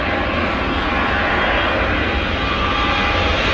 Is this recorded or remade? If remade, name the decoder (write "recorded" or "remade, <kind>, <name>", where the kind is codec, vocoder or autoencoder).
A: recorded